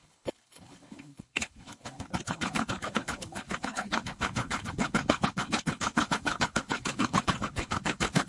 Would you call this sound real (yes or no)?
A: no